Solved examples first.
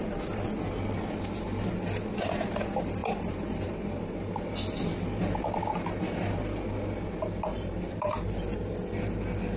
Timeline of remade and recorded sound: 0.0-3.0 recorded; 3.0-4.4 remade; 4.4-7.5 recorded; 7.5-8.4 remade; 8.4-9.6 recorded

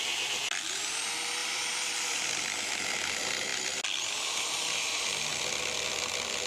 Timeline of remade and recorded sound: 0.0-1.4 recorded; 1.4-3.0 remade; 3.0-6.5 recorded

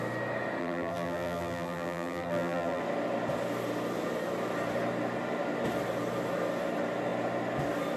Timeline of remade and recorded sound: 0.0-0.6 recorded; 0.6-2.8 remade; 2.8-8.0 recorded